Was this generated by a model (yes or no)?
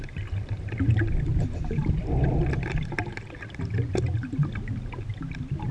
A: no